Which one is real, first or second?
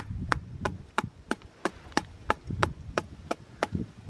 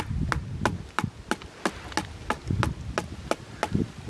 second